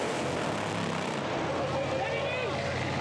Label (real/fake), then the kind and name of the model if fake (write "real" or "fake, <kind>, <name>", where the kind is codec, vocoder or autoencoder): real